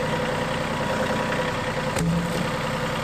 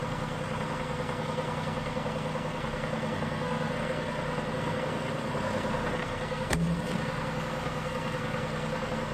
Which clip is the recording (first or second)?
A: first